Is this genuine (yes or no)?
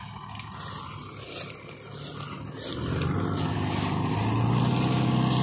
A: yes